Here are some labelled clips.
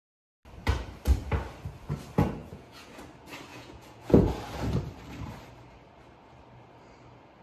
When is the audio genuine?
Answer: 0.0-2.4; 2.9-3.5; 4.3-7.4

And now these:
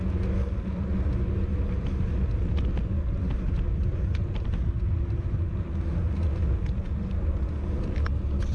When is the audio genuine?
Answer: 0.0-3.8; 4.7-8.5

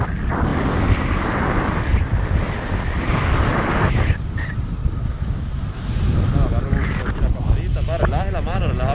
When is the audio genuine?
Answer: 0.0-8.9

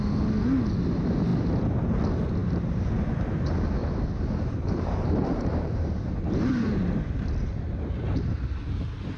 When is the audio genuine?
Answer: 0.0-2.4; 2.9-3.8; 6.8-9.2

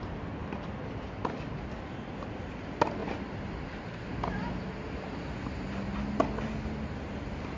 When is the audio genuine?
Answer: 0.0-7.6

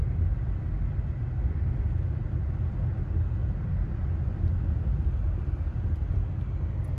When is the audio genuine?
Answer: 0.0-7.0

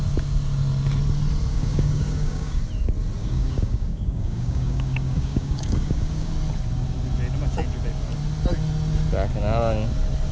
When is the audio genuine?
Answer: 0.0-1.5; 2.6-3.2; 6.3-10.3

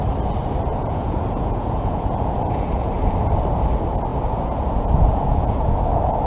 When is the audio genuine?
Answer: 0.0-0.7; 2.9-4.1; 5.6-6.3